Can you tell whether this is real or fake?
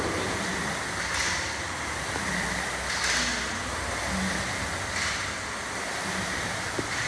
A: real